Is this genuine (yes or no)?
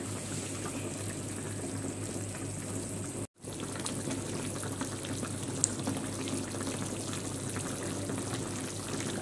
yes